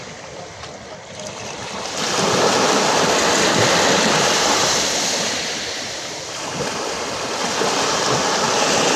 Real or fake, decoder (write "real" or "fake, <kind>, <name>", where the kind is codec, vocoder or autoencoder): real